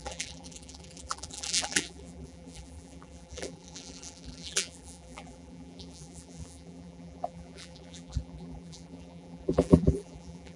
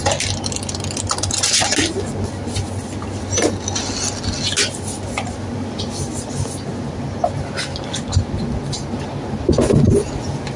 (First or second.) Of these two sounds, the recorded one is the second